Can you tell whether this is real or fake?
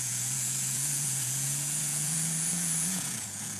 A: fake